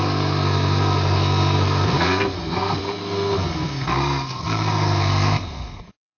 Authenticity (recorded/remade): remade